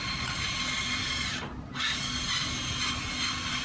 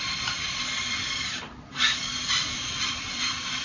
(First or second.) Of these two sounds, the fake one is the second